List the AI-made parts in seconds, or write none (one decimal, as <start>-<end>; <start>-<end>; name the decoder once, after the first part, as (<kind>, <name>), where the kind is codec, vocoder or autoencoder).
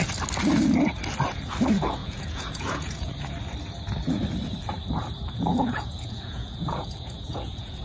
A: 2.0-3.1 (vocoder, Vocos); 5.5-7.8